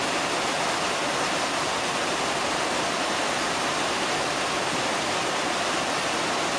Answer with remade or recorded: recorded